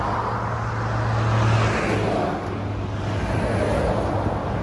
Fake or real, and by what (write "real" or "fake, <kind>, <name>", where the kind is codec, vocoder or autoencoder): real